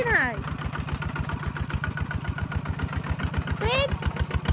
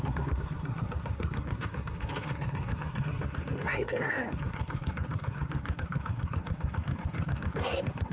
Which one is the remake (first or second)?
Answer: second